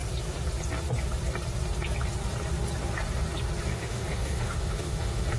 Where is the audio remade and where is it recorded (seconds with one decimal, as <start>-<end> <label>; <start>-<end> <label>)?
0.0-3.7 recorded; 3.7-5.4 remade